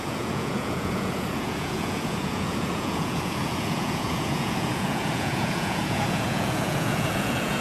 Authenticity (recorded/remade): remade